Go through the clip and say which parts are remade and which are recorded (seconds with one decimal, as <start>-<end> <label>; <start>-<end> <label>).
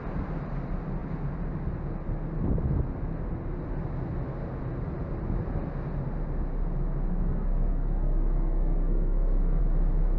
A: 0.0-7.1 recorded; 7.1-9.6 remade; 9.6-10.2 recorded